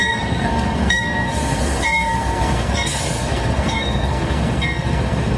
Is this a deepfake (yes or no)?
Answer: yes